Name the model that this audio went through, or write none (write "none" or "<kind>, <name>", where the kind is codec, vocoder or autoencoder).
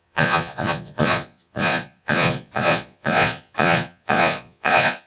vocoder, Vocos